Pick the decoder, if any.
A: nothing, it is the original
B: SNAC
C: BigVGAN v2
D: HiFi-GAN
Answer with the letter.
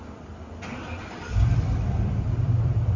C